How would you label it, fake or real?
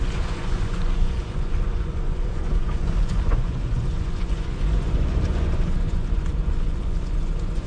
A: fake